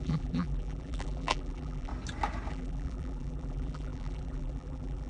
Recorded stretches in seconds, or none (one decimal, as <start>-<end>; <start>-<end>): 1.9-2.5